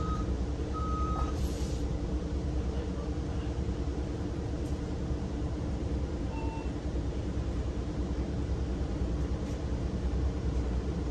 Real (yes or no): no